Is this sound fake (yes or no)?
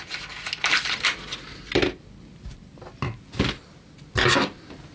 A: no